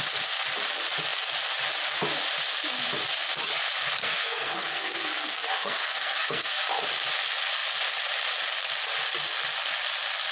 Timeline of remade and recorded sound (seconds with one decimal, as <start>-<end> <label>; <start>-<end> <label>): 0.0-4.0 recorded; 4.0-6.7 remade; 6.7-10.3 recorded